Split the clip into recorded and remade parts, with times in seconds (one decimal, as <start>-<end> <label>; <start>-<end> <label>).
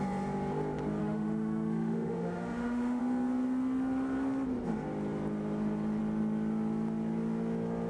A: 0.0-1.0 recorded; 1.0-3.0 remade; 3.0-7.9 recorded